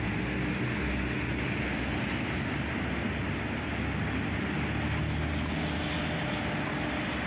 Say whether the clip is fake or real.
real